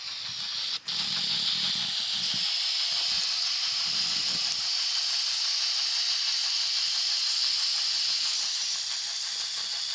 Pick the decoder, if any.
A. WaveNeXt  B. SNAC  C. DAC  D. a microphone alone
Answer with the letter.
D